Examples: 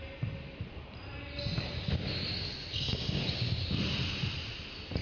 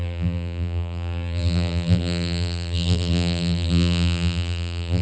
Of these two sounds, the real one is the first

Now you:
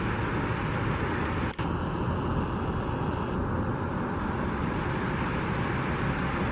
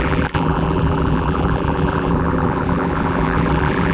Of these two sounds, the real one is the first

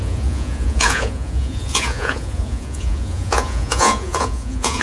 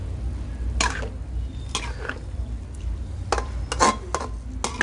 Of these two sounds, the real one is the second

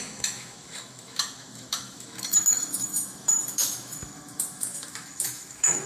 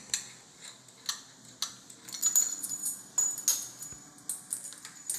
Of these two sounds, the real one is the second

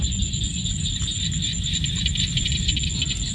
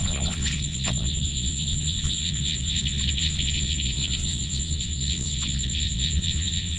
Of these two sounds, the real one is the first